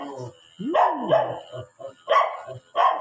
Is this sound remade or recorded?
recorded